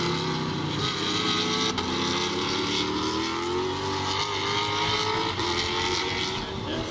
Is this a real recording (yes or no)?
yes